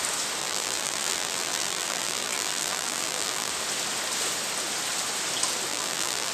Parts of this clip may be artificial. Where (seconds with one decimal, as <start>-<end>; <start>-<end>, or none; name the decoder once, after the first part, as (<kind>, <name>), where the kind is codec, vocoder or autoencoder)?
0.4-3.5 (vocoder, BigVGAN v2); 5.7-6.3